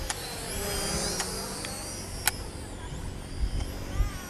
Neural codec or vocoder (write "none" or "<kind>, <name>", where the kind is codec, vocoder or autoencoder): none